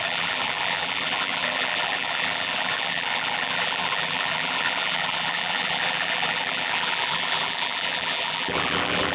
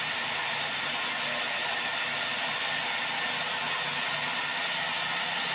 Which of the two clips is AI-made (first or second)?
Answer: first